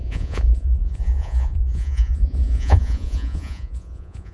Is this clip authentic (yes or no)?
no